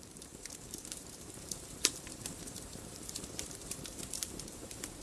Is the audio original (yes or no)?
no